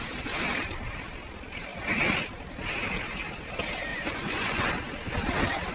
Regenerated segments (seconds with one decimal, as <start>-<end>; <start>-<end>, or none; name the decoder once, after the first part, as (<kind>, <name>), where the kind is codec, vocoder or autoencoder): 3.9-4.7 (vocoder, Vocos)